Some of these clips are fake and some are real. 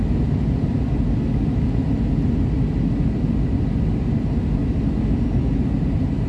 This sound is real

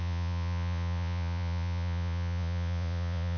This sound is fake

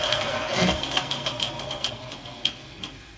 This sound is fake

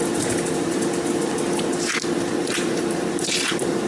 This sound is real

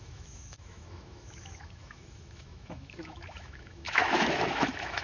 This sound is fake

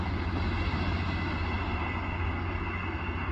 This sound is real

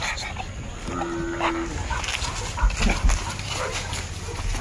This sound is real